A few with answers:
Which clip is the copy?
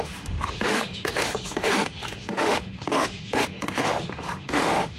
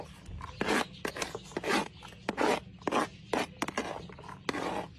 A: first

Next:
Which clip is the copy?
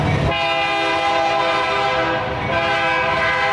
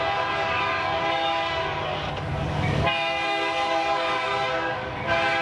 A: second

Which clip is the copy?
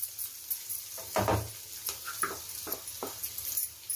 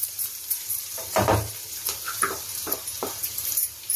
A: second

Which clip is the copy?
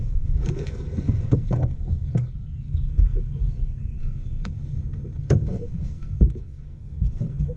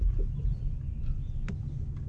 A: first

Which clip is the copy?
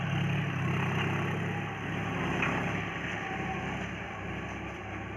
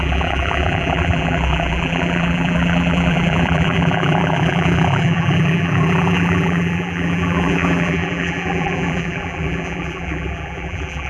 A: second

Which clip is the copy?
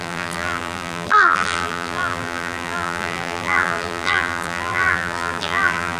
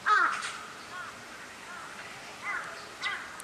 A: first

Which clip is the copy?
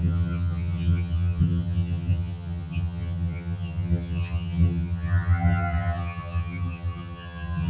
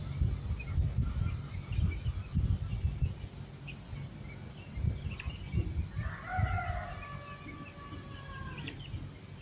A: first